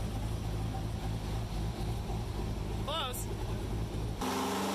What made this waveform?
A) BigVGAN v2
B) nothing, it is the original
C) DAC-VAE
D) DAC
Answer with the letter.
B